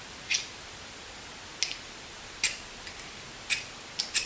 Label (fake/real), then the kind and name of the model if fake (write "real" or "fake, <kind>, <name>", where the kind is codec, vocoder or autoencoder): real